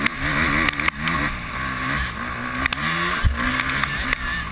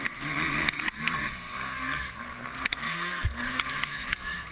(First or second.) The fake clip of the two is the second